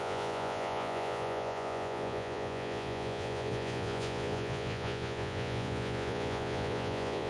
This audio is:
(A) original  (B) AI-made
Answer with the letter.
B